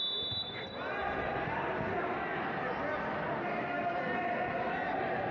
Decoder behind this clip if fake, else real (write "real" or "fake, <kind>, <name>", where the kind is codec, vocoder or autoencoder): real